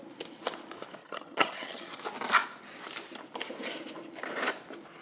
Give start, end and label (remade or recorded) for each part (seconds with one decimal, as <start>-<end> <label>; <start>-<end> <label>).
0.0-1.0 recorded; 1.0-2.0 remade; 2.0-5.0 recorded